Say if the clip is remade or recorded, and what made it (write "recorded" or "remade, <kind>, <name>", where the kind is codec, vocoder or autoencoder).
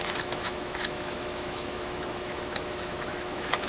remade, autoencoder, DAC-VAE